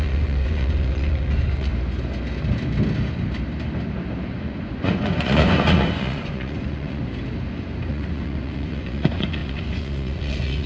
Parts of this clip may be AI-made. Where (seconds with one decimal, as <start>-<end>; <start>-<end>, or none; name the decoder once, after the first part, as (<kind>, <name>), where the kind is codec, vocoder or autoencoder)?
0.0-1.7 (vocoder, Vocos); 4.4-7.0; 7.9-10.7